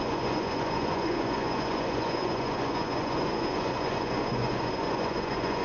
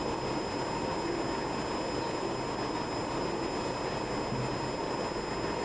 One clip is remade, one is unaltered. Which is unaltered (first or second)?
second